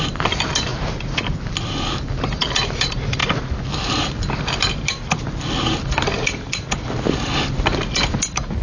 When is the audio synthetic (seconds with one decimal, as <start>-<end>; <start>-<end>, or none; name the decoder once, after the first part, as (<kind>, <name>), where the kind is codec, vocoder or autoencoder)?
none